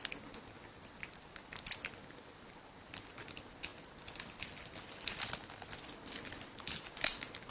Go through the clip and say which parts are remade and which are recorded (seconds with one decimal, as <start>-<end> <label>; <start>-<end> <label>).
0.0-7.5 recorded